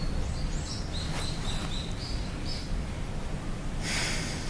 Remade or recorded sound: recorded